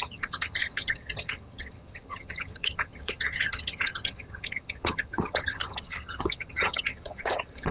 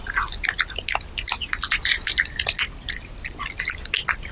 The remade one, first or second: first